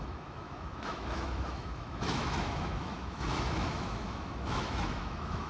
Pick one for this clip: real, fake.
fake